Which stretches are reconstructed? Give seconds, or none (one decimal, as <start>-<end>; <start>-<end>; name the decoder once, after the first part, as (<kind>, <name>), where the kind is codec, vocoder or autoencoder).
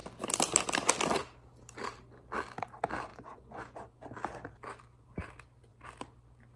3.1-3.9 (vocoder, Vocos)